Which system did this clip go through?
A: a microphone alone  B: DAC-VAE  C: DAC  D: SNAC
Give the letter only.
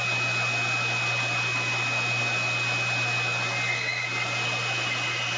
A